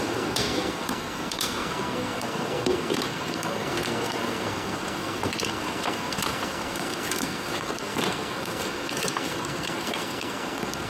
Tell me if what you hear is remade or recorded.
remade